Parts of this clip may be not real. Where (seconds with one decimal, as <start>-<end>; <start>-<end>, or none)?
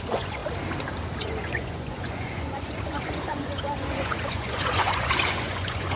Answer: 0.0-0.4; 1.2-6.0